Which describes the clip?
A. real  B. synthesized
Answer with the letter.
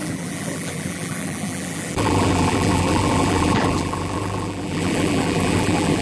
B